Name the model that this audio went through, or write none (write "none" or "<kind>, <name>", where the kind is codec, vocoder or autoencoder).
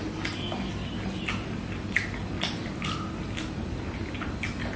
none